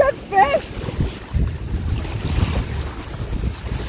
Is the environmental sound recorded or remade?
recorded